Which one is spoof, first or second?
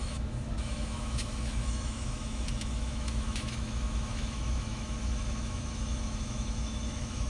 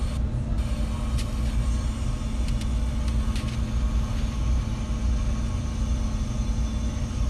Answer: first